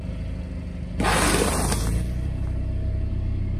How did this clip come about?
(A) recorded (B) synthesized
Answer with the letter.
A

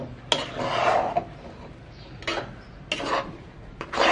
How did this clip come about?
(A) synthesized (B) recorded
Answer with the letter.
B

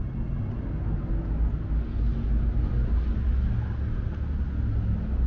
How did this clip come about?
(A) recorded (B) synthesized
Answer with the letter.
A